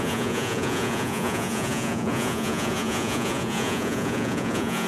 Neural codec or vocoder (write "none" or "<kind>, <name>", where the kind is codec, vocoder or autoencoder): vocoder, Vocos